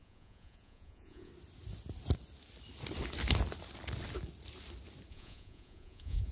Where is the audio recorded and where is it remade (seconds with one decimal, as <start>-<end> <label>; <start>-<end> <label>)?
0.0-1.3 remade; 1.3-5.1 recorded; 5.1-6.3 remade